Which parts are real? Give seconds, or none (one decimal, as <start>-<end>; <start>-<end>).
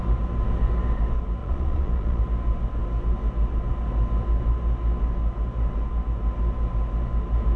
0.0-1.4; 2.2-7.6